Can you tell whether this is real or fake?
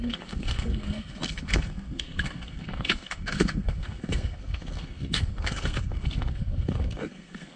fake